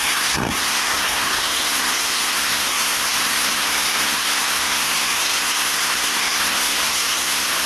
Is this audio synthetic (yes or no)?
yes